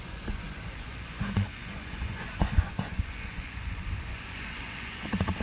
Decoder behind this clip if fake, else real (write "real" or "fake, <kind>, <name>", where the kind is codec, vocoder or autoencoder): fake, vocoder, Vocos